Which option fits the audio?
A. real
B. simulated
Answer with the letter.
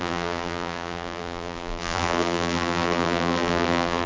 B